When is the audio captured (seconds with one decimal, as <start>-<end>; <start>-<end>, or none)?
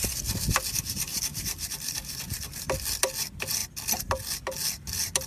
0.6-1.1; 2.5-5.3